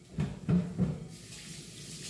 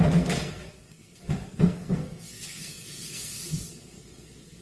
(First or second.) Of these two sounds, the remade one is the second